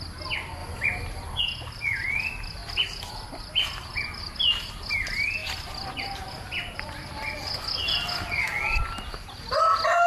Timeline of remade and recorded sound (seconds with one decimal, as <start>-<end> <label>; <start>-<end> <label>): 0.0-10.1 recorded